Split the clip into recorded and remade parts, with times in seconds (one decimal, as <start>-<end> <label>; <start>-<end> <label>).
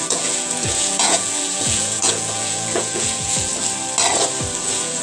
0.0-3.5 remade; 3.5-4.6 recorded; 4.6-5.0 remade